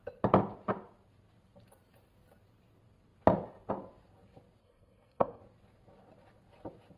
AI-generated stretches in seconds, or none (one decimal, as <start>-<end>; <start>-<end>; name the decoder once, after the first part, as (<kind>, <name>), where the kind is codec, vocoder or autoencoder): 4.6-5.4 (codec, SNAC)